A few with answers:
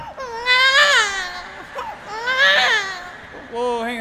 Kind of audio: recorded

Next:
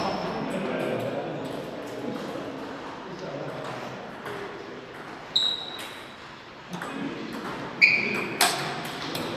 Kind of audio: recorded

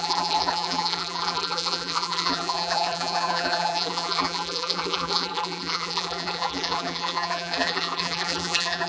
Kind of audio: remade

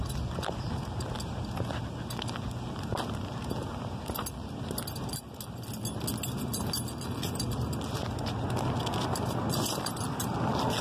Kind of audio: recorded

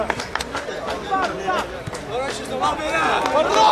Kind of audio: recorded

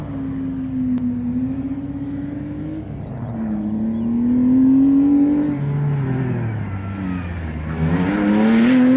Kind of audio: recorded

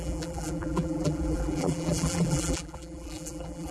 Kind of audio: remade